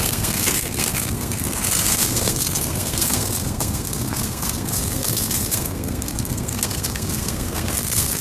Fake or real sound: fake